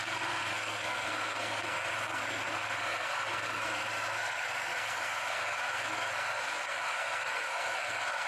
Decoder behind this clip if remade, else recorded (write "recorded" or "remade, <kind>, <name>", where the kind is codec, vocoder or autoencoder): remade, codec, SNAC